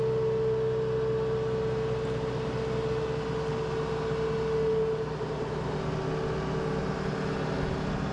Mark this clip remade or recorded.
recorded